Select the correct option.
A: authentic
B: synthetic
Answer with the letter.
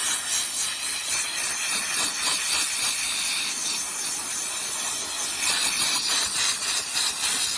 B